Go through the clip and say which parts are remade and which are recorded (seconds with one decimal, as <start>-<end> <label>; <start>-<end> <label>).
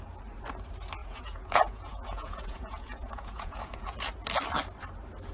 0.0-1.0 recorded; 1.0-4.1 remade; 4.1-5.3 recorded